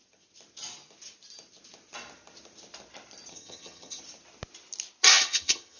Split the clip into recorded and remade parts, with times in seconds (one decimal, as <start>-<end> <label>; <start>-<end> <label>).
0.0-3.3 recorded; 3.3-4.0 remade; 4.0-5.1 recorded; 5.1-5.8 remade